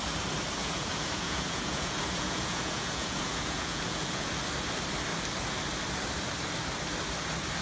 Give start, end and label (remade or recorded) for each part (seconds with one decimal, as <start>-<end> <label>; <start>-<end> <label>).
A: 0.0-0.6 recorded; 0.6-4.3 remade; 4.3-7.6 recorded